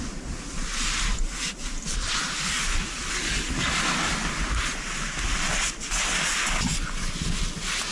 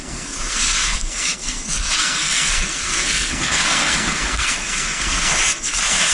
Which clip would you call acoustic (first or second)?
first